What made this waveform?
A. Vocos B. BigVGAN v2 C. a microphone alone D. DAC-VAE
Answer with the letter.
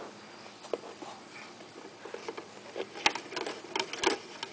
C